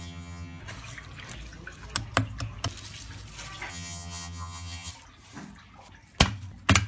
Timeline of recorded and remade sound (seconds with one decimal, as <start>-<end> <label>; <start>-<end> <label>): 0.0-0.6 remade; 0.6-3.7 recorded; 3.7-4.9 remade; 4.9-6.9 recorded